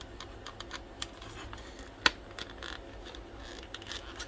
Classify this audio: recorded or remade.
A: recorded